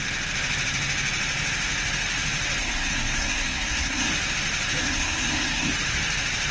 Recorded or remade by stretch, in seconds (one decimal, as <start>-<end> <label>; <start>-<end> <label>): 0.0-2.6 recorded; 2.6-4.1 remade; 4.1-4.8 recorded; 4.8-5.7 remade; 5.7-6.5 recorded